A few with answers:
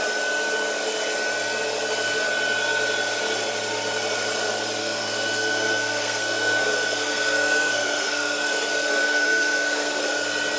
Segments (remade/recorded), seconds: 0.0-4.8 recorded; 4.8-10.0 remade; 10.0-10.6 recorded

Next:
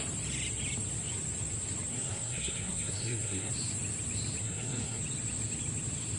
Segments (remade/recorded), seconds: 0.0-1.9 recorded; 1.9-3.5 remade; 3.5-4.4 recorded; 4.4-5.0 remade; 5.0-6.2 recorded

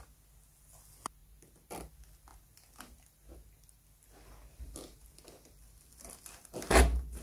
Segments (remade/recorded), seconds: 0.0-7.2 recorded

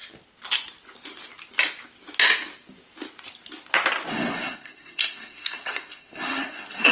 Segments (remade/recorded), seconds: 0.0-4.1 recorded; 4.1-6.9 remade